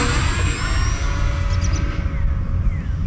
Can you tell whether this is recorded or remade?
recorded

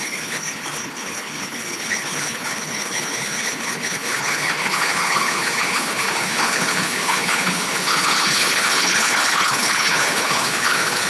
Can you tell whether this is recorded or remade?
remade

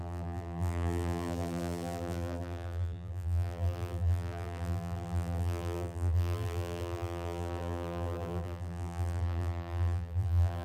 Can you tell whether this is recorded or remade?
remade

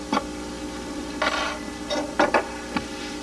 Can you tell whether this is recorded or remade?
recorded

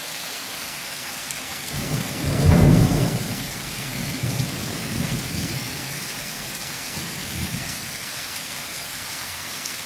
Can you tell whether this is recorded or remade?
remade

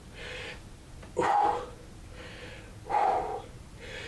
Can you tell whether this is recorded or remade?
recorded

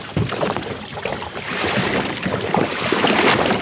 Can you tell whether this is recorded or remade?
recorded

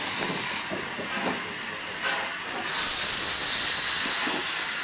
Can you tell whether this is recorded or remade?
recorded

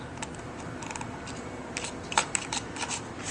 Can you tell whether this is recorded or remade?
remade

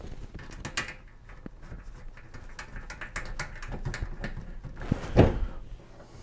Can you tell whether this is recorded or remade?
recorded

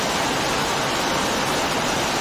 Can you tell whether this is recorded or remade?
recorded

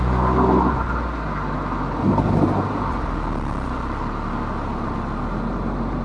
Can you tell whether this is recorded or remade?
recorded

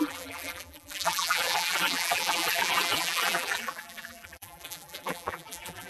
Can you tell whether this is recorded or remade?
remade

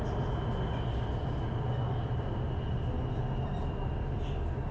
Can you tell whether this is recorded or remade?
recorded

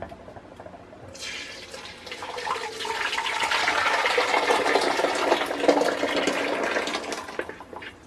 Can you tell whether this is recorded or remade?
recorded